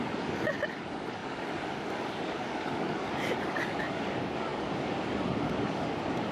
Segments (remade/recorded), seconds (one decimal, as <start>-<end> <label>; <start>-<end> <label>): 0.0-6.3 remade